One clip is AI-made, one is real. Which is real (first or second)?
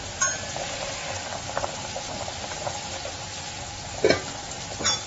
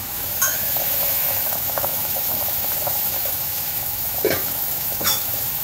first